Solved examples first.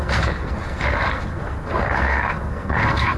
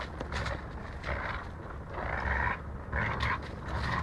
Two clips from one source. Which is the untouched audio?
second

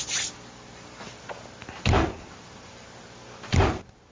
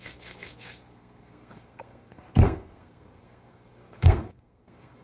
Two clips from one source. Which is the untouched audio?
first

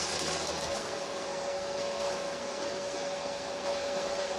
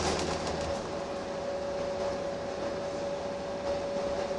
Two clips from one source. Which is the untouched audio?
second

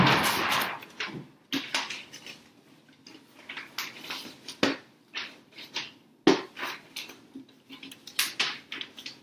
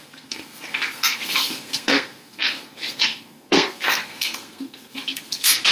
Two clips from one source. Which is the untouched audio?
first